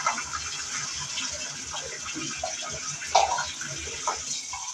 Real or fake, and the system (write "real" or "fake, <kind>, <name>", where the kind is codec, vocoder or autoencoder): real